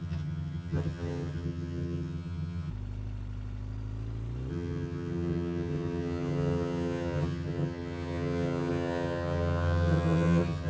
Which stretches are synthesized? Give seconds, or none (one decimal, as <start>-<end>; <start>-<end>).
0.0-2.7; 4.5-10.7